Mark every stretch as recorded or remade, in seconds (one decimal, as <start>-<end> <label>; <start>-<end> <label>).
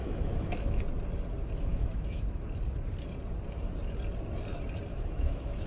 0.0-0.8 remade; 0.8-1.7 recorded; 1.7-2.4 remade; 2.4-4.9 recorded; 4.9-5.7 remade